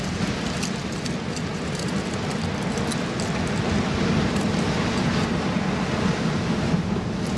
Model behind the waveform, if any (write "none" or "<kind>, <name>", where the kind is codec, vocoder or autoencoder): none